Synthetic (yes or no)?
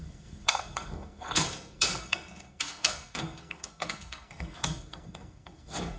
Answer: yes